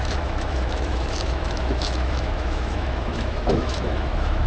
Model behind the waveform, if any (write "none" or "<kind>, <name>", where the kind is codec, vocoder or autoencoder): autoencoder, DAC-VAE